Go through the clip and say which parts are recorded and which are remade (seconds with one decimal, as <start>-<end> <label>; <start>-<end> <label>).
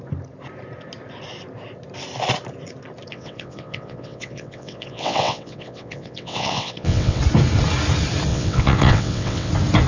0.0-3.1 recorded; 3.1-7.2 remade; 7.2-8.3 recorded; 8.3-9.5 remade; 9.5-9.9 recorded